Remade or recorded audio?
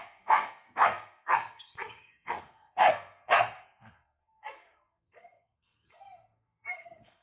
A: remade